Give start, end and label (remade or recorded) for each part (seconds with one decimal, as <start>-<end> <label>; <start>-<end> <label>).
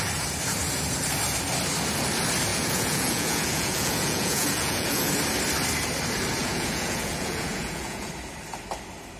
0.0-2.5 recorded; 2.5-5.1 remade; 5.1-6.4 recorded; 6.4-8.1 remade; 8.1-9.2 recorded